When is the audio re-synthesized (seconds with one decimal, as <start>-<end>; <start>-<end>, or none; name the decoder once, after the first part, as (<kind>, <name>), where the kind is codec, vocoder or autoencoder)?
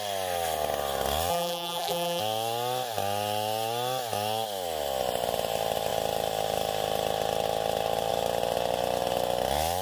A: 1.3-2.2 (vocoder, BigVGAN v2)